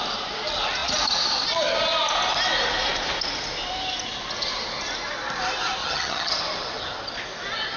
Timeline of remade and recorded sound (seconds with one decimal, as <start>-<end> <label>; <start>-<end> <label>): 0.0-5.8 recorded; 5.8-6.3 remade; 6.3-7.8 recorded